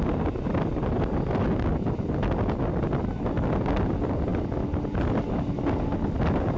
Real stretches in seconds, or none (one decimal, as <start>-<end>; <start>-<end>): 0.0-6.6